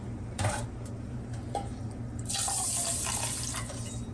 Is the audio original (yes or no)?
no